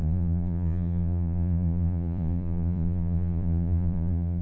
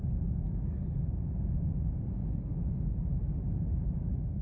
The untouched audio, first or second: second